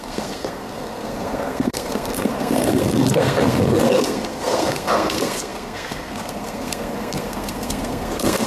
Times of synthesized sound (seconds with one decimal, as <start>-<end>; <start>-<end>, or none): 0.0-8.5